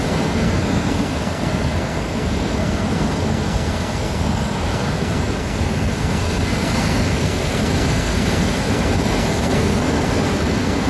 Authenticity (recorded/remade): remade